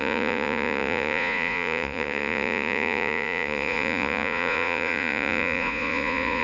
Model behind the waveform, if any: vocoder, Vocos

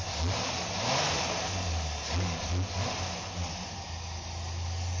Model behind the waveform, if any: none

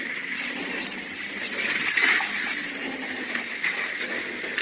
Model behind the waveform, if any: none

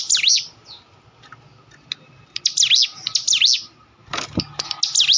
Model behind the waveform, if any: none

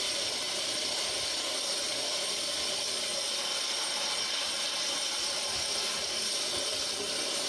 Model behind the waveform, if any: none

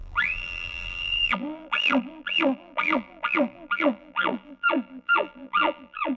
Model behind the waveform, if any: vocoder, BigVGAN v2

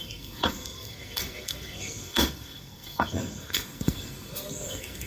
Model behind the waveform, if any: codec, SNAC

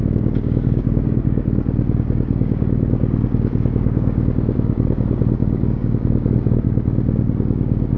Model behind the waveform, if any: codec, DAC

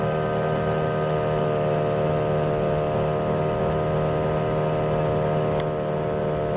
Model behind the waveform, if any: none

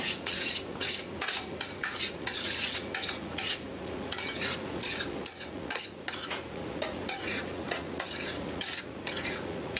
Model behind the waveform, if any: vocoder, Vocos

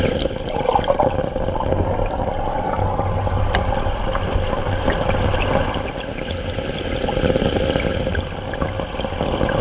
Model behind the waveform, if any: none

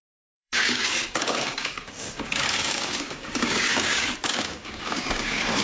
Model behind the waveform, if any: codec, DAC